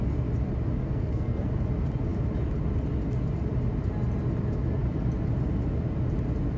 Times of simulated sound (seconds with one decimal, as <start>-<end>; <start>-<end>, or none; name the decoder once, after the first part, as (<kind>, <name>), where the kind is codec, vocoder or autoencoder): 0.8-1.5 (codec, SNAC)